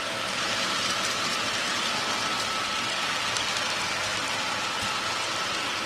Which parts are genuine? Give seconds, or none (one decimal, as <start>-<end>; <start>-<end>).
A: 0.0-4.1; 5.1-5.9